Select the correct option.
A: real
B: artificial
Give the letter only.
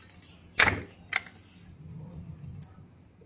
A